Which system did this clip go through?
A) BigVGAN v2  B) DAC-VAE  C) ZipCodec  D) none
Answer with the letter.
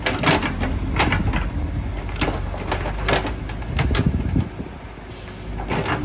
D